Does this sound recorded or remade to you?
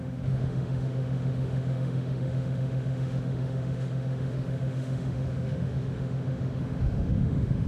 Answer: remade